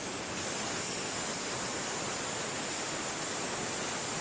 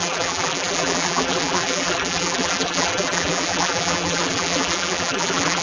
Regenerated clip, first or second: second